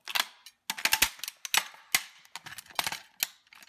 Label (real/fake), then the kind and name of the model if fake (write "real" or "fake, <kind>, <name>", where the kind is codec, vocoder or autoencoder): real